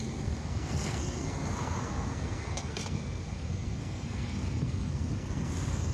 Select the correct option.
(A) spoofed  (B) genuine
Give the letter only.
A